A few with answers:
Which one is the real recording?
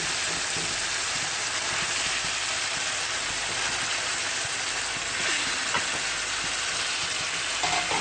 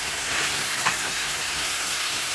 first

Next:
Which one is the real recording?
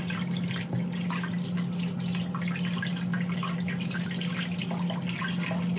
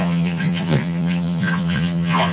first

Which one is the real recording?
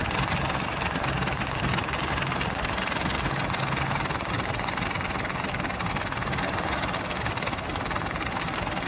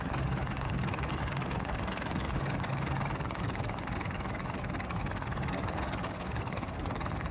first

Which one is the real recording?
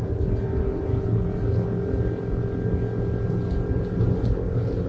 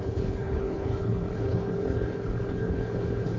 first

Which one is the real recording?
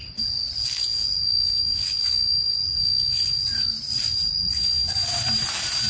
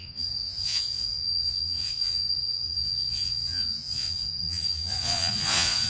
first